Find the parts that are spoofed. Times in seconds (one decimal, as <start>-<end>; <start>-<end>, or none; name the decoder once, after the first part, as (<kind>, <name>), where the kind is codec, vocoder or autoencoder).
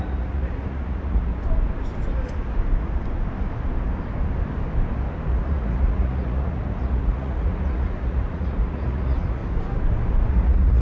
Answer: 0.0-1.3 (vocoder, Vocos); 5.3-9.4; 10.3-10.8